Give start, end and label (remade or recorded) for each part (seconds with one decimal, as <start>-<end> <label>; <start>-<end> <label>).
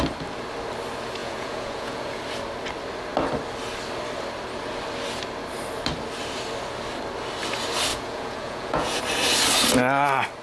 0.0-1.2 recorded; 1.2-2.2 remade; 2.2-7.9 recorded; 7.9-9.0 remade; 9.0-10.4 recorded